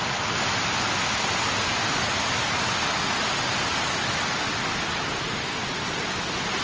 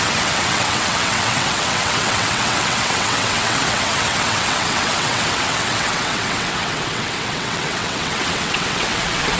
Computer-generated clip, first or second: second